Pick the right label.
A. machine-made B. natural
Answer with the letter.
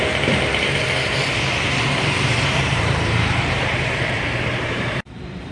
A